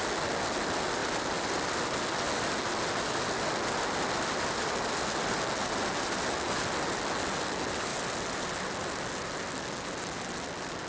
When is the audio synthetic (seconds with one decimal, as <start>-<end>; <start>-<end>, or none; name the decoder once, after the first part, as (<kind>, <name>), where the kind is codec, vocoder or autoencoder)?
none